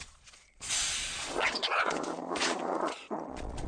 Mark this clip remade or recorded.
remade